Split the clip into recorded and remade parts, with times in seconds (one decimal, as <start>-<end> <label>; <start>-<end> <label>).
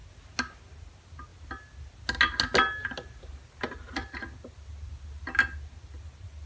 0.0-6.5 recorded